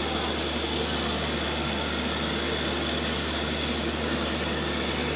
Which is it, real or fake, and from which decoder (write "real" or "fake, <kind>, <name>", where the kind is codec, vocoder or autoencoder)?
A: real